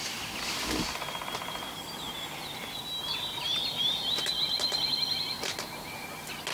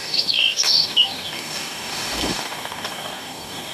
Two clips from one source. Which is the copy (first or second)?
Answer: second